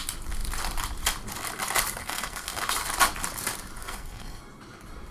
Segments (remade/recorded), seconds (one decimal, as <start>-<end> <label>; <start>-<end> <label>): 0.0-2.0 recorded; 2.0-2.7 remade; 2.7-3.8 recorded; 3.8-4.4 remade; 4.4-5.1 recorded